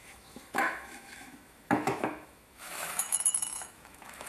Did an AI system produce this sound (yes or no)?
yes